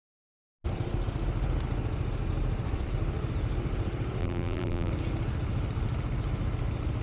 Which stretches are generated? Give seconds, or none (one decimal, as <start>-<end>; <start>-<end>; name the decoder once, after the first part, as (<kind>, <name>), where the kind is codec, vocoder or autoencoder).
4.2-4.9 (vocoder, BigVGAN v2)